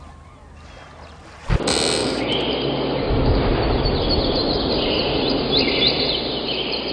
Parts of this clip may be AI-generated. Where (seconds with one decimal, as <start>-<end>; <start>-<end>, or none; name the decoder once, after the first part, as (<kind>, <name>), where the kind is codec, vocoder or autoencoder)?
2.0-6.1 (vocoder, BigVGAN v2)